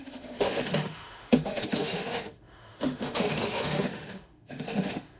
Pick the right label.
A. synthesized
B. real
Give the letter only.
A